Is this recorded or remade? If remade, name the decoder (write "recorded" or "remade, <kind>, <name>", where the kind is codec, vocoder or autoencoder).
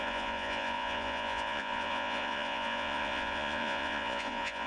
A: remade, vocoder, Vocos